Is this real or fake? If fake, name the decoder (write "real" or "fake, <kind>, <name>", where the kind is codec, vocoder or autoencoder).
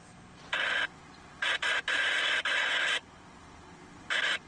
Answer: real